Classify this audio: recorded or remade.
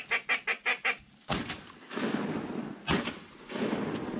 recorded